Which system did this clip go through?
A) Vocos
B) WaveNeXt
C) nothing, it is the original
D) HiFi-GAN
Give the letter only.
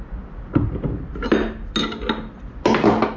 C